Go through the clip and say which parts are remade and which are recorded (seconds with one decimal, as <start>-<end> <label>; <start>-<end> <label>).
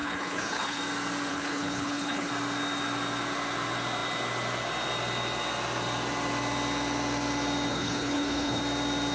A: 0.0-0.8 remade; 0.8-1.3 recorded; 1.3-2.3 remade; 2.3-7.7 recorded; 7.7-8.6 remade; 8.6-9.1 recorded